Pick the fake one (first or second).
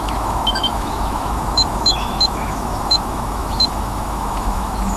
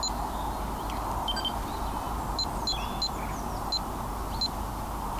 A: first